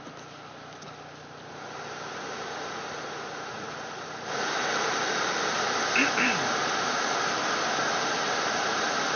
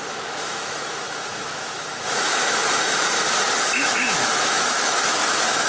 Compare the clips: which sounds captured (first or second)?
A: first